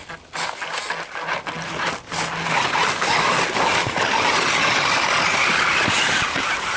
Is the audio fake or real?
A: real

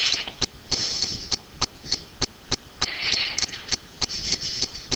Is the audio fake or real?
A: fake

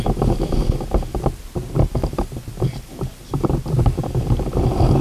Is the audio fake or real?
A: fake